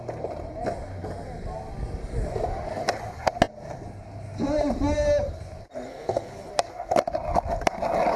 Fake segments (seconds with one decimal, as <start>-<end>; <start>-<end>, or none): 5.9-6.5